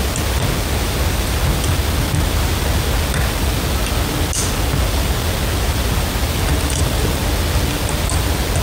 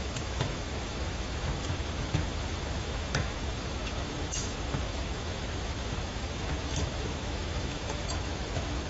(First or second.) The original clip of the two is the first